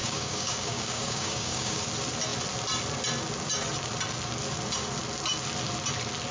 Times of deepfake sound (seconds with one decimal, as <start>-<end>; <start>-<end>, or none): 0.0-1.8